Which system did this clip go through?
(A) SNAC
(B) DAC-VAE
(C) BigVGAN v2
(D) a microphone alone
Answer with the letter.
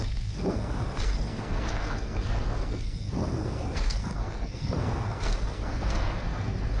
A